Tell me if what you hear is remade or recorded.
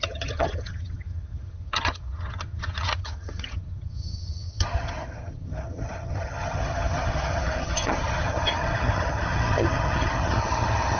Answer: remade